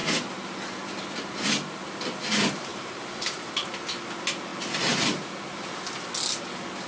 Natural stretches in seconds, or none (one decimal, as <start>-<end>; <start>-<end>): 0.0-2.7; 3.5-6.9